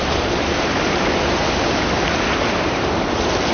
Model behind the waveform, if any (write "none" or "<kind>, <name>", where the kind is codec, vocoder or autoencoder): vocoder, BigVGAN v2